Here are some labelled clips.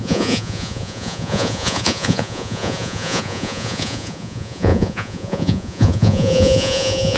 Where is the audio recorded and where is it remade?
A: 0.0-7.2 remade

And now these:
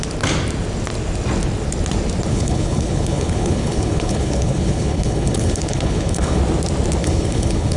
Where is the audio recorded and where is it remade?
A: 0.0-2.3 recorded; 2.3-6.4 remade; 6.4-7.0 recorded; 7.0-7.8 remade

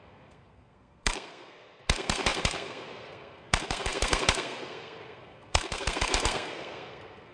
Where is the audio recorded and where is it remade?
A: 0.0-7.3 remade

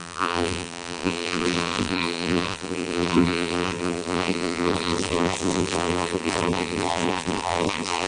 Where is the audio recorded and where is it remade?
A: 0.0-8.1 remade

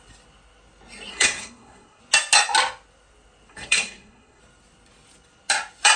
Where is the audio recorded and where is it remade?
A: 0.0-1.1 recorded; 1.1-2.0 remade; 2.0-3.5 recorded; 3.5-4.4 remade; 4.4-6.0 recorded

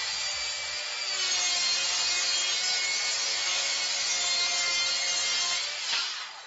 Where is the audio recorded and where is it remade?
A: 0.0-3.3 recorded; 3.3-3.8 remade; 3.8-6.5 recorded

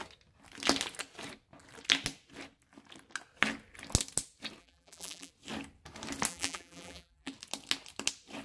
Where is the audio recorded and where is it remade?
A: 0.0-4.6 recorded; 4.6-5.3 remade; 5.3-6.3 recorded; 6.3-7.3 remade; 7.3-8.4 recorded